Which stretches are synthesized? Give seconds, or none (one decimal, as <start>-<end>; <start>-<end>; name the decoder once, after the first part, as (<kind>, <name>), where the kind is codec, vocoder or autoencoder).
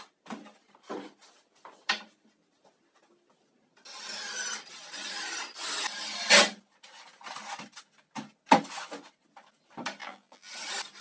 10.0-10.5 (vocoder, BigVGAN v2)